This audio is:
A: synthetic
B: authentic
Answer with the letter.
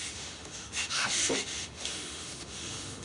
A